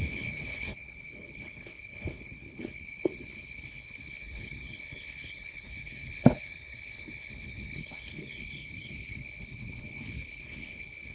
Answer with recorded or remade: remade